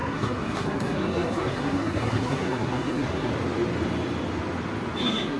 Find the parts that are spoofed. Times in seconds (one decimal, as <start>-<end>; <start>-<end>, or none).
0.0-3.3; 5.0-5.4